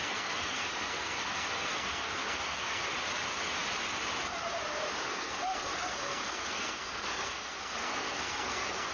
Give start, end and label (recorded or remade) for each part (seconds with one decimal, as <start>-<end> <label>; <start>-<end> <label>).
0.0-2.8 remade; 2.8-5.1 recorded; 5.1-8.9 remade